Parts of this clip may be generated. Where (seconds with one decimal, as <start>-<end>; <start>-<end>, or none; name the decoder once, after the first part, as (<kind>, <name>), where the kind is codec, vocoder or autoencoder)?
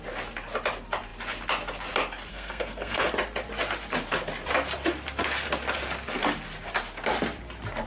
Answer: 2.3-3.1 (codec, SNAC)